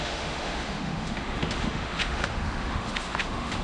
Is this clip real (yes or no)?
no